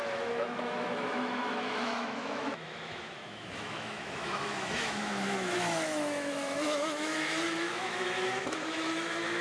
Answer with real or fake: fake